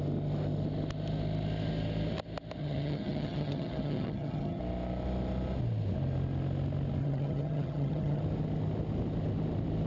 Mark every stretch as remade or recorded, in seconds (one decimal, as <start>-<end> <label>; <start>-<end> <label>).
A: 0.0-2.6 recorded; 2.6-4.6 remade; 4.6-7.0 recorded; 7.0-8.2 remade; 8.2-9.9 recorded